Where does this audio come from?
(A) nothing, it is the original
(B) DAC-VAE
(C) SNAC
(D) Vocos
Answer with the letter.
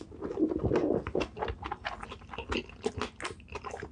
A